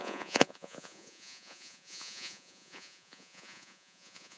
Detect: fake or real fake